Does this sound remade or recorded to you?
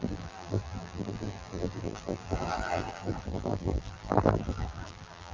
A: remade